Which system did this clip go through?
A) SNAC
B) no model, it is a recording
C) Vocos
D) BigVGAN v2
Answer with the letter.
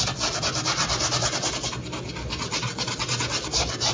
B